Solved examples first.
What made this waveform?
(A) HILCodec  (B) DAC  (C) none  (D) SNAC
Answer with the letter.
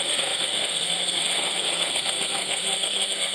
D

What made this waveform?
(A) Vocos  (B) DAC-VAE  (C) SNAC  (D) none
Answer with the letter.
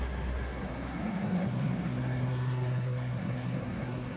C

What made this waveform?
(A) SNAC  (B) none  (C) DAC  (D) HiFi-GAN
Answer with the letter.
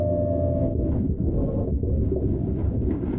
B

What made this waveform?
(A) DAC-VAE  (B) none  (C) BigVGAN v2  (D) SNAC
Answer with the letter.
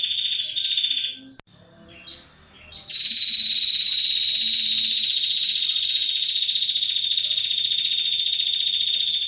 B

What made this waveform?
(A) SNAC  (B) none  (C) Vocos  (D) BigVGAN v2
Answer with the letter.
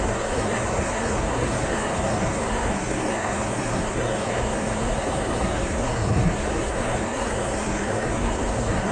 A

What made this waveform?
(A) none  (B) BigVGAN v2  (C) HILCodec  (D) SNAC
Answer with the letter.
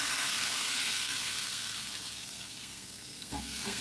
D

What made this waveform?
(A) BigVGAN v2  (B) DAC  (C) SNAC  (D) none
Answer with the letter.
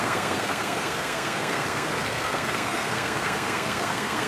C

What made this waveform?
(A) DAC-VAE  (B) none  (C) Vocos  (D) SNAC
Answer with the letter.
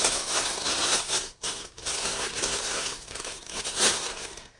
D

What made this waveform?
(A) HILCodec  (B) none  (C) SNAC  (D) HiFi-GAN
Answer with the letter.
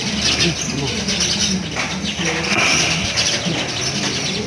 B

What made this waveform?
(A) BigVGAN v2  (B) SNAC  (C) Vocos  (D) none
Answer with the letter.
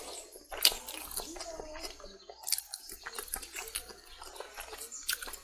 D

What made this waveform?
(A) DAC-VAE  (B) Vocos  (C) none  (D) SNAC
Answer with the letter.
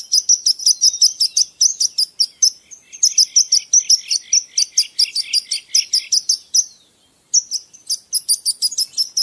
C